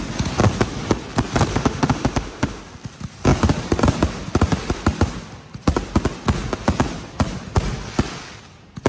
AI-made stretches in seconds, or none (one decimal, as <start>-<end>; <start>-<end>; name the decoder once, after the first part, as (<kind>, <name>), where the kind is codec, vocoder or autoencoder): 1.5-2.6 (autoencoder, DAC-VAE)